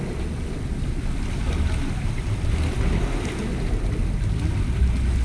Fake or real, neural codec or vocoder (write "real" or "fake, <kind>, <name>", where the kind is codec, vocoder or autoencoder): real